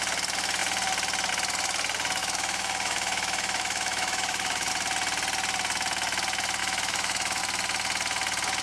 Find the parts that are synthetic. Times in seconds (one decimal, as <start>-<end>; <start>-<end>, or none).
2.2-4.7; 6.6-7.4

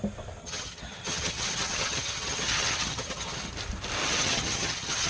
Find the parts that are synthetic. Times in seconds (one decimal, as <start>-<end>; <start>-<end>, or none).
0.4-3.5; 4.0-5.1

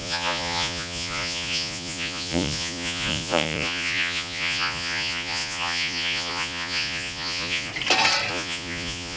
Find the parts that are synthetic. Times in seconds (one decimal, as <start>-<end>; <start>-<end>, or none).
0.0-7.7; 8.3-9.2

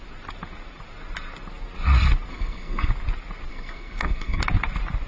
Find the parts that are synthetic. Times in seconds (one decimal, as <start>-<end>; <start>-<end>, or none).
2.3-2.9; 3.5-4.4

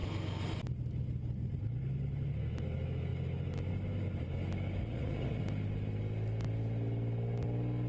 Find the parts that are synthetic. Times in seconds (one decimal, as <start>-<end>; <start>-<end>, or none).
4.8-5.4